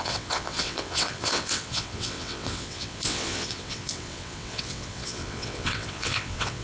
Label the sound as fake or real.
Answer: fake